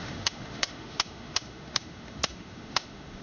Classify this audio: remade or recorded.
remade